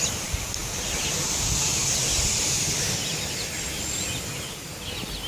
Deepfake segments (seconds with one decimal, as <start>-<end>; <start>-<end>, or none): none